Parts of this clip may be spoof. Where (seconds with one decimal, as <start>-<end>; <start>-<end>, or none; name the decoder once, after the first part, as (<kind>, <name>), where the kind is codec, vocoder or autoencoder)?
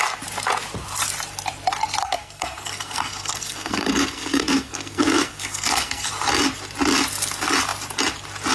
2.0-6.1 (codec, SNAC)